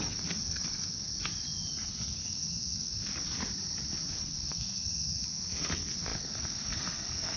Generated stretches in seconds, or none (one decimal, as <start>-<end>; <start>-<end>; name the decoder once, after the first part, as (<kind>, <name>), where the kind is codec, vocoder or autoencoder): 0.0-1.1 (codec, SNAC); 1.9-3.1; 4.2-7.4